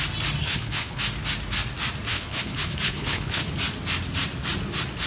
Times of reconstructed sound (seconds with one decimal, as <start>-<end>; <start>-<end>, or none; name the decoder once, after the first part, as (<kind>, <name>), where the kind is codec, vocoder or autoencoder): 0.4-1.0 (codec, HILCodec); 2.1-3.5